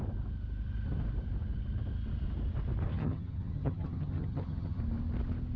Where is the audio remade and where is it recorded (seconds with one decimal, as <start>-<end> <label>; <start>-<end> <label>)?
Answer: 0.0-2.9 recorded; 2.9-4.8 remade; 4.8-5.6 recorded